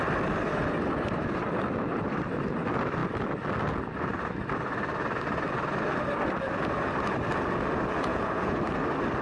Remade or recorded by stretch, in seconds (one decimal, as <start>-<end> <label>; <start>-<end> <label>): 0.0-8.1 recorded; 8.1-8.6 remade; 8.6-9.2 recorded